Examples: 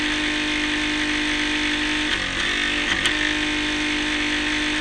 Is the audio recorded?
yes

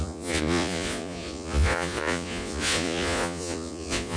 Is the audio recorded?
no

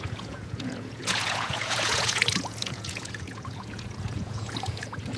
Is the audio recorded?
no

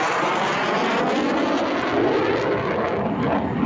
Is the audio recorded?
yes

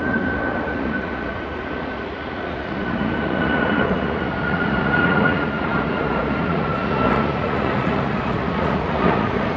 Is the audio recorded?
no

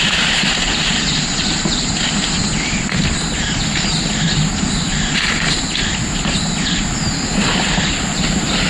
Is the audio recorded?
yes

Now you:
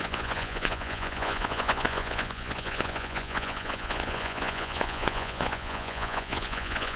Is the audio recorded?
no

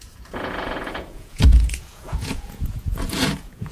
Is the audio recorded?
no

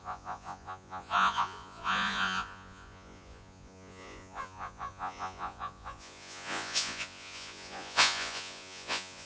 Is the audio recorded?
no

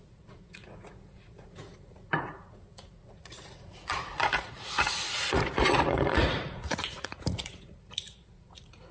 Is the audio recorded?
no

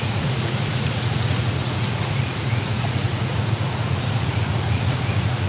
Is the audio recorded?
no